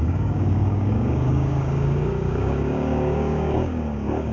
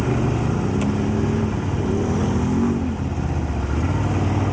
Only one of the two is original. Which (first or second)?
second